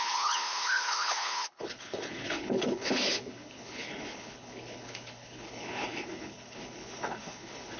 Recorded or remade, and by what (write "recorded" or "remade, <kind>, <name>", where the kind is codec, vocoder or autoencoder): remade, codec, HILCodec